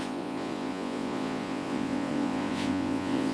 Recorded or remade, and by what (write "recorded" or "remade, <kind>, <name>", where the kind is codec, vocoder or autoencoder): remade, vocoder, Vocos